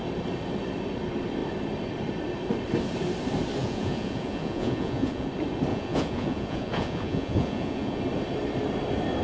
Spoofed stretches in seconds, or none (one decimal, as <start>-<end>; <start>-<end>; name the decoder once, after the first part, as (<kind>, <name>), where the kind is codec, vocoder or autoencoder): 3.6-5.3 (vocoder, Vocos); 5.7-8.0